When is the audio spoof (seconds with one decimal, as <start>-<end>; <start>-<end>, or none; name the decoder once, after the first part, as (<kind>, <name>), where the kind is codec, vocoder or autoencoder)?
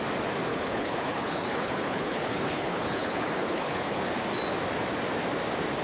0.5-4.0 (codec, HILCodec)